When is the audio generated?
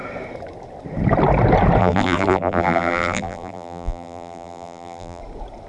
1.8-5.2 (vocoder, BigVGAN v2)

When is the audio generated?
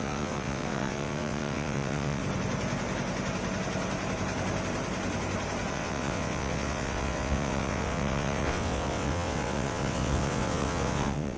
0.0-2.2 (vocoder, WaveNeXt); 5.7-11.4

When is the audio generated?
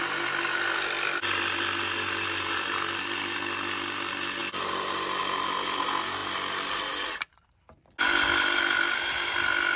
none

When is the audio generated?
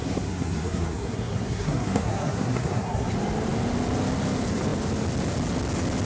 0.0-3.1 (codec, SNAC)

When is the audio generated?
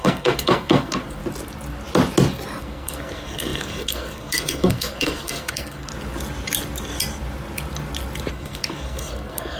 0.0-1.2 (codec, SNAC); 2.6-5.9; 8.3-9.6